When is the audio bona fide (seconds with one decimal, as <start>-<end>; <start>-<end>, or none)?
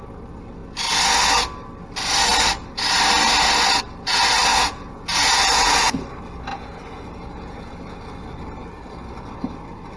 0.0-4.5; 6.0-6.5; 7.7-10.0